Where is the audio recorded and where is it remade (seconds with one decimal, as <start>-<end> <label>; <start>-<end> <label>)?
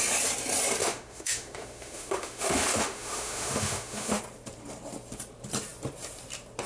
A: 0.0-0.8 recorded; 0.8-4.2 remade; 4.2-6.7 recorded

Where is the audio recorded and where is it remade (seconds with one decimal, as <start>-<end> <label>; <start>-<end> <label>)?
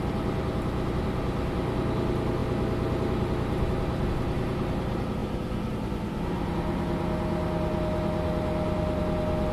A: 0.0-9.5 recorded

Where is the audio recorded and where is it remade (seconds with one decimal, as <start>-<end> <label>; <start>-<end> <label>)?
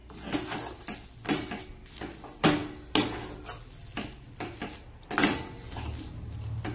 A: 0.0-6.7 recorded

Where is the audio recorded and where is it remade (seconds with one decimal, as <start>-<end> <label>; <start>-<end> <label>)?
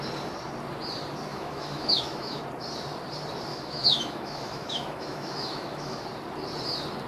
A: 0.0-1.3 recorded; 1.3-2.4 remade; 2.4-3.5 recorded; 3.5-6.0 remade; 6.0-7.1 recorded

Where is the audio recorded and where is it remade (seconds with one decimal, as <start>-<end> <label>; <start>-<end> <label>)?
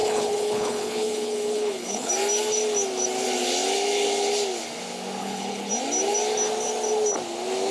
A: 0.0-2.1 remade; 2.1-5.2 recorded; 5.2-5.7 remade; 5.7-7.7 recorded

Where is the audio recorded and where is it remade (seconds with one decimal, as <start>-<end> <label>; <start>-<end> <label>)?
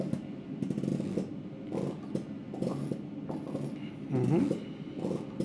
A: 0.0-5.4 recorded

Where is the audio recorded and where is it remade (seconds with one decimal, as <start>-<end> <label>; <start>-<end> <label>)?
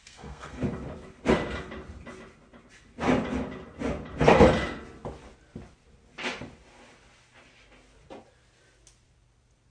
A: 0.0-0.6 remade; 0.6-9.7 recorded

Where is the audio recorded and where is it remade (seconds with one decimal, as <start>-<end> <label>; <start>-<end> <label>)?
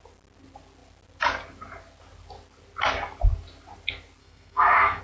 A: 0.0-4.2 recorded; 4.2-5.0 remade